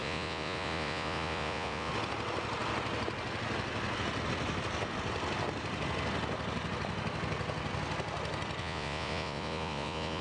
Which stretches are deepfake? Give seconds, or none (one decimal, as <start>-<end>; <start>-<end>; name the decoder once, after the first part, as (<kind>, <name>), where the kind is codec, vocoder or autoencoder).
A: 0.0-1.9 (vocoder, Vocos); 8.6-10.2